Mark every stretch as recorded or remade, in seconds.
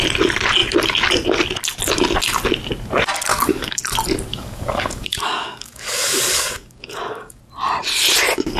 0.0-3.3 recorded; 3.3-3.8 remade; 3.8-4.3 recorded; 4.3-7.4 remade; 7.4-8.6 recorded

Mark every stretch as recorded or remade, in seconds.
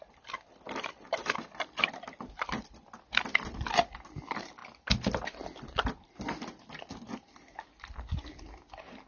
0.0-9.1 recorded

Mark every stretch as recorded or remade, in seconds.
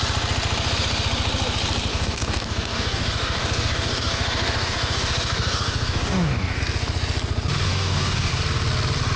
0.0-1.9 recorded; 1.9-6.6 remade; 6.6-7.7 recorded; 7.7-8.3 remade; 8.3-9.2 recorded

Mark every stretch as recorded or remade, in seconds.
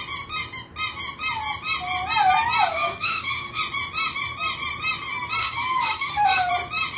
0.0-2.7 recorded; 2.7-3.6 remade; 3.6-5.4 recorded; 5.4-6.5 remade; 6.5-7.0 recorded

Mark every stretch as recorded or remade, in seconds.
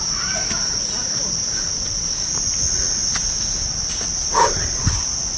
0.0-5.4 recorded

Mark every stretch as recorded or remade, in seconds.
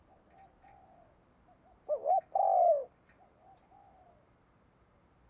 0.0-5.3 recorded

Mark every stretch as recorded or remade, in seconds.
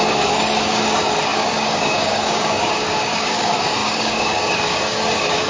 0.0-5.5 remade